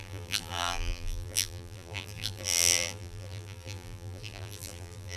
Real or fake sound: fake